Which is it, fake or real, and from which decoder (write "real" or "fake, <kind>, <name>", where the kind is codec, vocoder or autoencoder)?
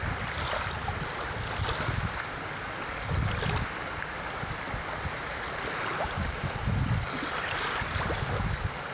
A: real